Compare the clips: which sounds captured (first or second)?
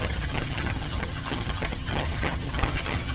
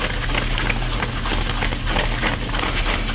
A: second